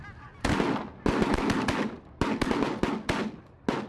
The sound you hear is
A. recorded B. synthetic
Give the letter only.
A